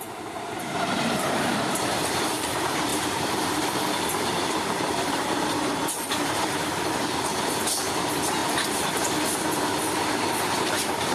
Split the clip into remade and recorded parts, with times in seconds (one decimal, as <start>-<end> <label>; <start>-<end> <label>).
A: 0.0-7.3 remade; 7.3-7.9 recorded; 7.9-8.4 remade; 8.4-10.6 recorded; 10.6-11.1 remade